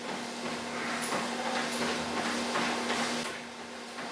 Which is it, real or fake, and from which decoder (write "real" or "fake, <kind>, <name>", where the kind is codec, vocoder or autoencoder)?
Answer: real